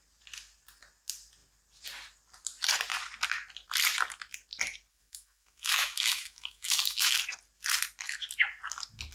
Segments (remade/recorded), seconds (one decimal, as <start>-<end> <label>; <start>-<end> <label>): 0.0-4.9 recorded; 4.9-7.2 remade; 7.2-9.1 recorded